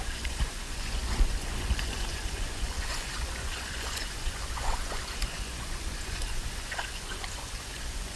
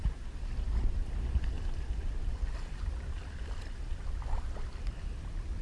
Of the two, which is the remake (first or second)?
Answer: first